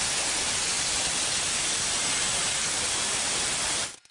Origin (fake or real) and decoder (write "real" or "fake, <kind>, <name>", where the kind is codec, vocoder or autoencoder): real